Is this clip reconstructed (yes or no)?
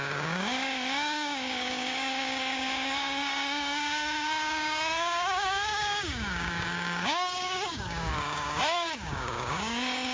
yes